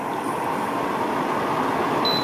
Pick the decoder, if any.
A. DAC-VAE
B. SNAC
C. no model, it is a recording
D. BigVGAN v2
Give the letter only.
C